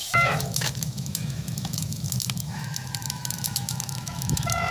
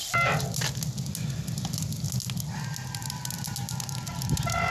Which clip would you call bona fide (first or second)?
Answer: second